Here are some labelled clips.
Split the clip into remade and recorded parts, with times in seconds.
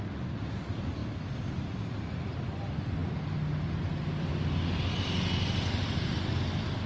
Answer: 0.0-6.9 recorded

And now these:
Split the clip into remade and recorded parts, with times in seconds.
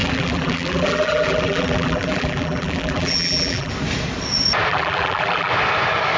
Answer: 0.0-3.7 remade; 3.7-4.7 recorded; 4.7-5.5 remade; 5.5-6.2 recorded